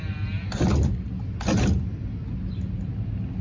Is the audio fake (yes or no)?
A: no